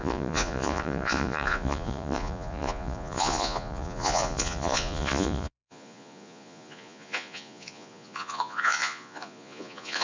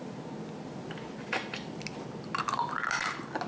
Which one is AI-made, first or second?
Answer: first